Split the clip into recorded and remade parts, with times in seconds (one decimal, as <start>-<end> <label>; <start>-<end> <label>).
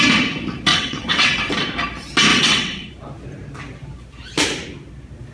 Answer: 0.0-0.7 recorded; 0.7-1.5 remade; 1.5-2.3 recorded; 2.3-2.9 remade; 2.9-5.3 recorded